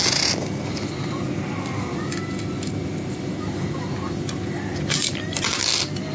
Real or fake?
real